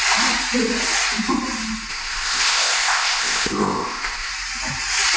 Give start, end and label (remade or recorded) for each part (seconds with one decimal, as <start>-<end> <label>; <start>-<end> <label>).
0.0-1.9 recorded; 1.9-4.3 remade; 4.3-5.2 recorded